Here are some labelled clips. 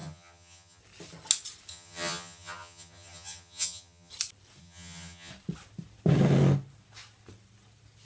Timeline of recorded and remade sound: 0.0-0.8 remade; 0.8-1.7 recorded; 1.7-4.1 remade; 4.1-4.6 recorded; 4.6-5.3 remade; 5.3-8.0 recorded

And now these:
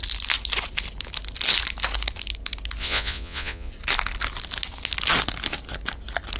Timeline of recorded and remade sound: 0.0-2.8 recorded; 2.8-3.7 remade; 3.7-6.4 recorded

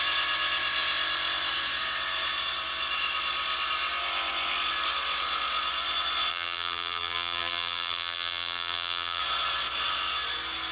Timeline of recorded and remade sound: 0.0-6.3 recorded; 6.3-9.2 remade; 9.2-10.7 recorded